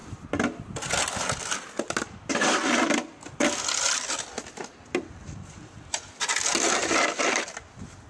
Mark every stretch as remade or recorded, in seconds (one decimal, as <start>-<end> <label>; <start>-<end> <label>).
0.0-8.1 recorded